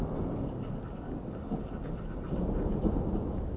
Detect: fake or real real